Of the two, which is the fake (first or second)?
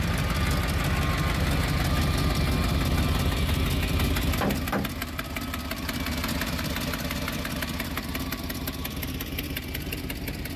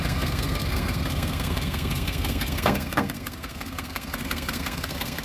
second